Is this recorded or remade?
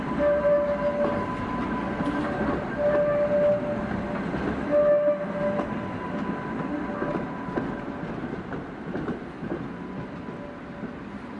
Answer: recorded